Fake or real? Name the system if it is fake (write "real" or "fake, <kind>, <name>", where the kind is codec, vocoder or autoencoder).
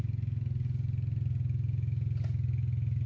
real